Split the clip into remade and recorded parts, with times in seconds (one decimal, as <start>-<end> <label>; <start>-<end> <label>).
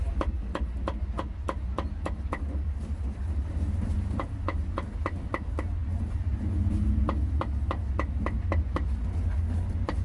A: 0.0-10.0 recorded